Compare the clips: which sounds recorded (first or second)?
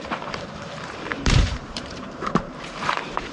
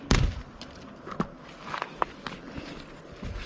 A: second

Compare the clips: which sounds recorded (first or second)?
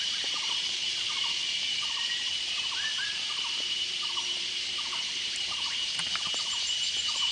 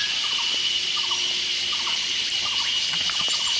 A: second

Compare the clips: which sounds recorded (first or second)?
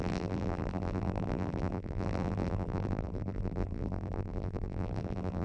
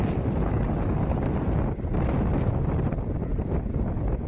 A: second